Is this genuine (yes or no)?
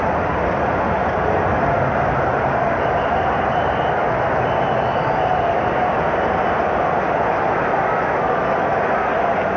yes